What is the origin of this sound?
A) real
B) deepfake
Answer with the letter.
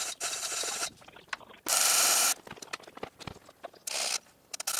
A